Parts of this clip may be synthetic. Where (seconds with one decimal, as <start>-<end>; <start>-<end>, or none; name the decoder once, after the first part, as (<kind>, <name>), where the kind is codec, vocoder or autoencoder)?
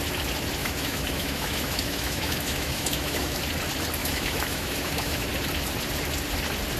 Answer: 0.6-3.4 (autoencoder, DAC-VAE); 4.0-5.3